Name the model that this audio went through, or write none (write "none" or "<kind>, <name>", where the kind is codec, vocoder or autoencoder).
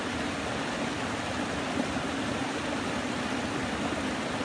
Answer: none